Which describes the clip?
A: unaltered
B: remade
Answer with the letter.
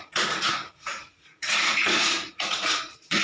B